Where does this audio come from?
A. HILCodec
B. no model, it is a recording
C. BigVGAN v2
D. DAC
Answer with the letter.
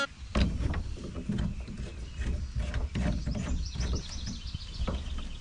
B